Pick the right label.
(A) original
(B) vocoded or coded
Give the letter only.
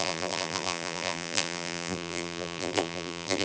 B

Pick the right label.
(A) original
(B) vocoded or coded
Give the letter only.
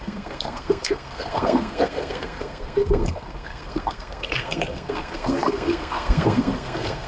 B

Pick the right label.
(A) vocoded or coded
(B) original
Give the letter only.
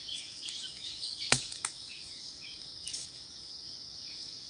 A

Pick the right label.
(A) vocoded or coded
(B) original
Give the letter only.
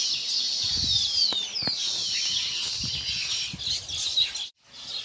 B